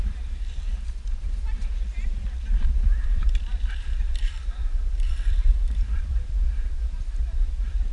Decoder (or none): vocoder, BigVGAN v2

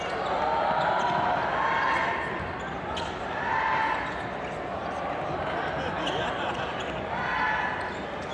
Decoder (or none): none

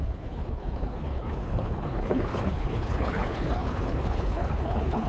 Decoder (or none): codec, HILCodec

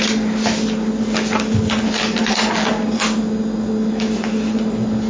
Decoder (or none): none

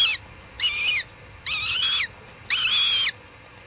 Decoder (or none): none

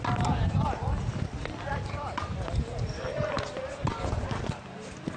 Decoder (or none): none